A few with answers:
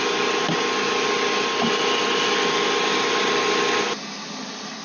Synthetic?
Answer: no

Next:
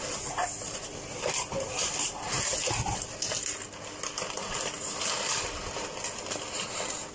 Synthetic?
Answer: no